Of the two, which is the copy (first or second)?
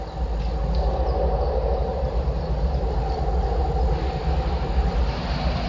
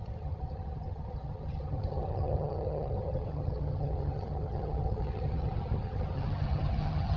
second